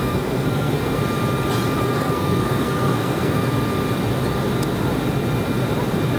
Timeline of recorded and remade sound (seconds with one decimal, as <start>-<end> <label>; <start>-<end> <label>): 0.0-1.0 remade; 1.0-1.8 recorded; 1.8-3.5 remade; 3.5-6.2 recorded